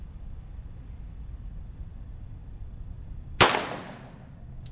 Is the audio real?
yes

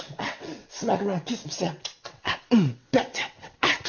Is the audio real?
no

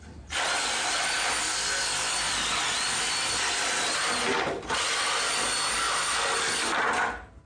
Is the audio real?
yes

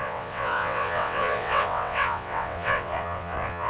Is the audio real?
no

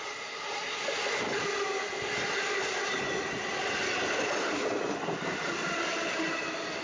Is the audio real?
yes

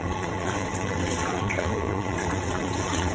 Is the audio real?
no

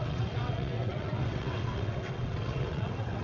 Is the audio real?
no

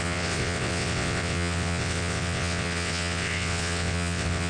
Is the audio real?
no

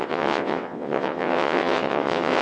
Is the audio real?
no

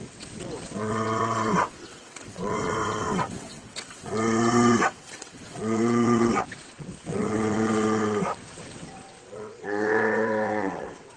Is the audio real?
no